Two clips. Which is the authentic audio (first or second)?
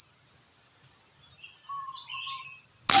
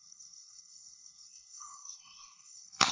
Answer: first